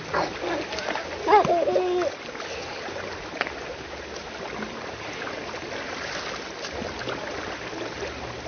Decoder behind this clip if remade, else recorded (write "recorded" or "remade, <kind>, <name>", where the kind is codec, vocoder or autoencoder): recorded